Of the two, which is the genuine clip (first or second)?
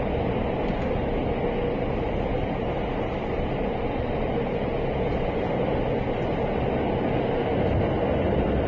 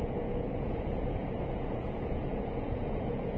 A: first